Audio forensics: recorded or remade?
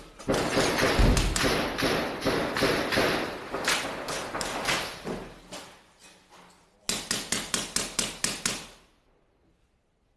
recorded